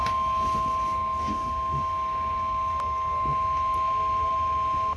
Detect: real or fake real